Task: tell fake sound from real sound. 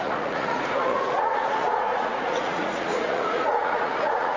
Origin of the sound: fake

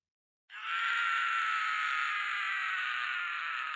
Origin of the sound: fake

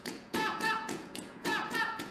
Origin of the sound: fake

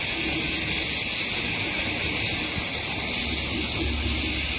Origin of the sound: real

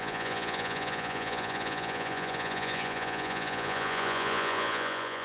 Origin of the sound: fake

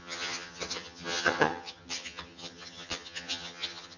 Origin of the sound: fake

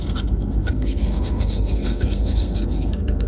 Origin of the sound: fake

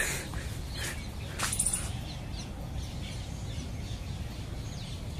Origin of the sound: real